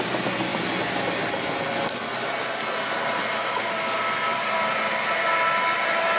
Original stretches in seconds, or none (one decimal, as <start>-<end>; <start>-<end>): 0.0-4.3; 4.8-6.2